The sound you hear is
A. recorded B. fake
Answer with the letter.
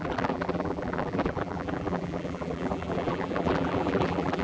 B